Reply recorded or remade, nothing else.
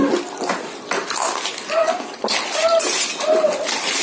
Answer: recorded